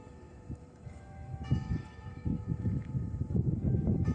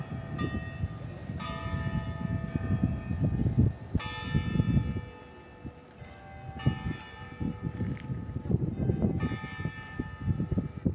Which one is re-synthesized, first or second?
first